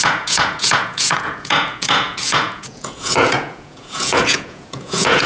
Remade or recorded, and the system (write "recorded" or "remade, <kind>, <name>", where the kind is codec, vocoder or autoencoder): remade, vocoder, Vocos